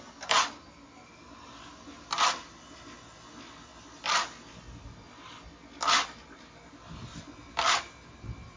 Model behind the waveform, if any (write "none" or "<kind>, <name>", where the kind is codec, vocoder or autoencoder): none